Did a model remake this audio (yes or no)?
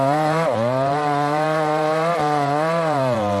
yes